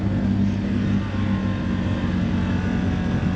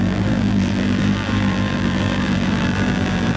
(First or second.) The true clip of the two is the first